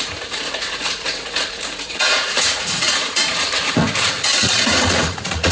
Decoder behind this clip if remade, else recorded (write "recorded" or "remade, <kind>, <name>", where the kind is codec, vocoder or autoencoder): remade, vocoder, Vocos